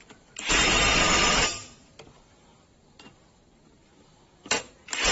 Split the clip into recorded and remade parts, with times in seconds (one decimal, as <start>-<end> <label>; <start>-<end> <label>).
0.0-5.1 remade